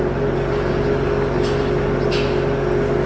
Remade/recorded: recorded